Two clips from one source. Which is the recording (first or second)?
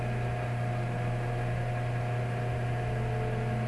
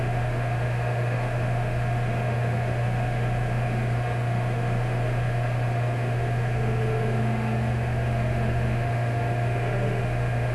first